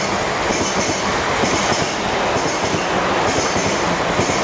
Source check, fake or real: real